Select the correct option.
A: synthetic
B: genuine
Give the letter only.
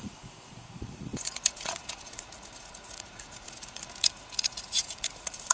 A